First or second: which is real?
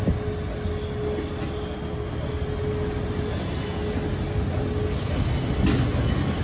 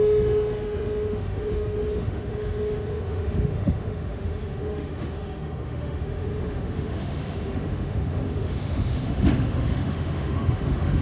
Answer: first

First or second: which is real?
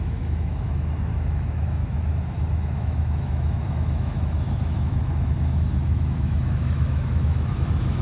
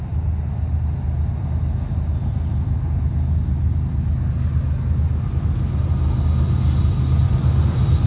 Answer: second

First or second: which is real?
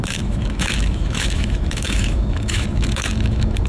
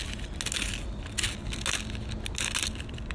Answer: second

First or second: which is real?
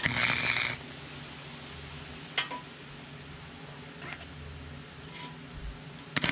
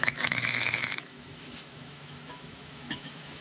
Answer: first